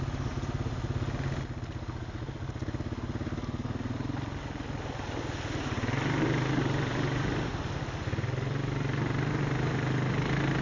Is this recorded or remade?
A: recorded